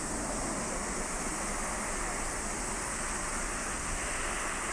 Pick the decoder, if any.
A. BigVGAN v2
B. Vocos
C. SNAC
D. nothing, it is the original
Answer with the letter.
D